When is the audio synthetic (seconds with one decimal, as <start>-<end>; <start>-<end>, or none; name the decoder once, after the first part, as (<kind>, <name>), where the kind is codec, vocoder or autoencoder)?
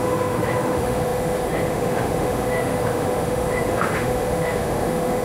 0.0-5.2 (autoencoder, DAC-VAE)